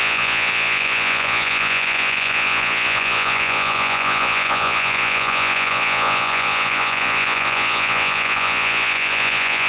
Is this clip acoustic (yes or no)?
no